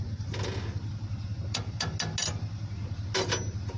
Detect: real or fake real